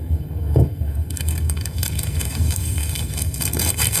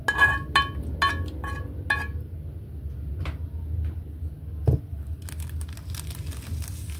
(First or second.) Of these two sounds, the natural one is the second